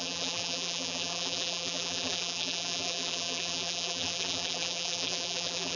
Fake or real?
fake